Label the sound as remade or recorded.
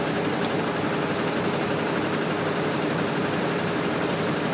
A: recorded